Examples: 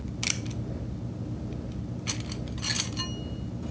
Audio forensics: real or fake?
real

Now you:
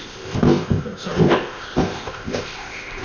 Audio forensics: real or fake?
fake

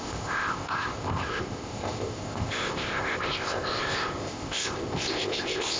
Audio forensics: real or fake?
fake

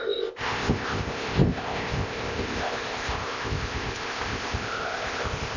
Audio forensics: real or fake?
fake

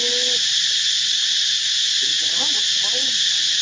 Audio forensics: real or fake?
real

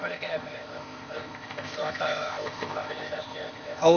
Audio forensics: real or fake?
fake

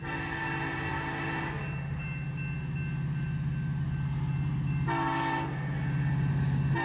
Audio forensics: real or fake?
real